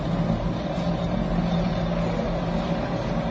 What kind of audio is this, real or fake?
real